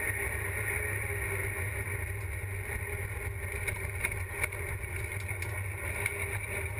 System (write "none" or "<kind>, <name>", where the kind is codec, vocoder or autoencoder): none